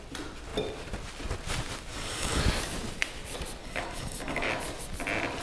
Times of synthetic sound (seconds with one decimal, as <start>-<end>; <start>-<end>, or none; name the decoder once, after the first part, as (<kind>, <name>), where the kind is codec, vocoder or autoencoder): 1.9-2.4 (codec, DAC); 3.6-4.5